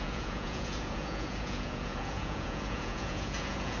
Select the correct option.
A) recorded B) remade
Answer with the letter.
B